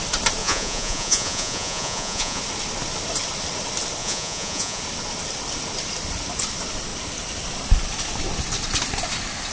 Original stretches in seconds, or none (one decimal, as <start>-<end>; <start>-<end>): 0.0-0.4; 2.4-4.0; 4.8-9.5